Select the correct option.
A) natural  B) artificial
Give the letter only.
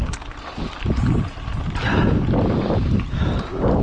A